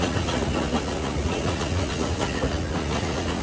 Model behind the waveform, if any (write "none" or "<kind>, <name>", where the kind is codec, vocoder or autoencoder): vocoder, Vocos